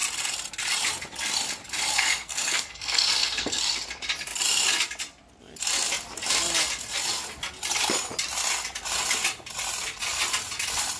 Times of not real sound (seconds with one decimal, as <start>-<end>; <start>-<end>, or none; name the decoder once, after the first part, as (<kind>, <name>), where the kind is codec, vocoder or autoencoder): 1.9-3.6 (codec, SNAC)